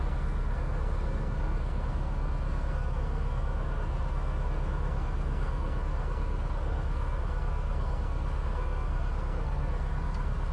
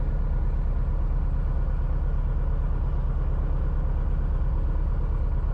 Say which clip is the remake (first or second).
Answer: first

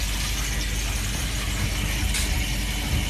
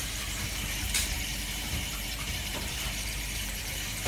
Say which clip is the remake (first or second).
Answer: second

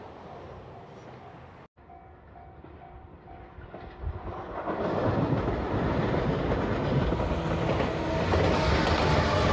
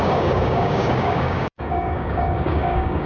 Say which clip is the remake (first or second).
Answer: second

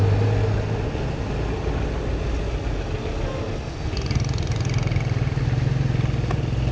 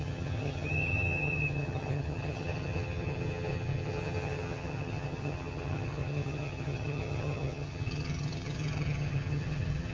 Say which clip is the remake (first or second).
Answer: second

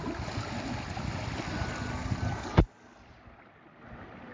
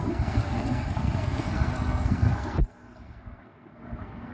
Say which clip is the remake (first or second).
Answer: second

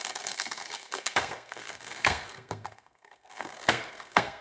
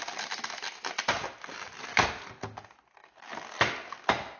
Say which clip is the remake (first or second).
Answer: first